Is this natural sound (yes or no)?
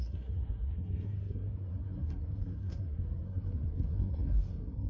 no